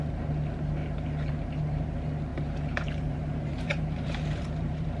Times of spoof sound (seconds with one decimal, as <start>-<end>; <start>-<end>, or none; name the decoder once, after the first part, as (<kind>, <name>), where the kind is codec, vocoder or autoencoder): 2.3-5.0 (vocoder, BigVGAN v2)